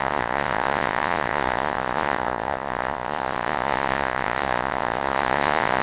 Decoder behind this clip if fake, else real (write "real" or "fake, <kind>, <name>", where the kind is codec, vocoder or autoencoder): fake, vocoder, Vocos